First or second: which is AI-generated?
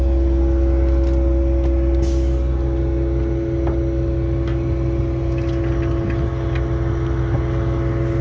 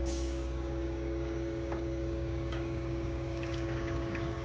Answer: second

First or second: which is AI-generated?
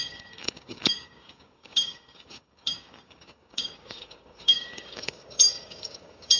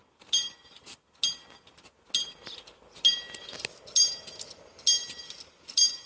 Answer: first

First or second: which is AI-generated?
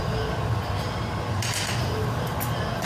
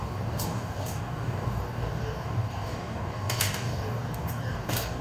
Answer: second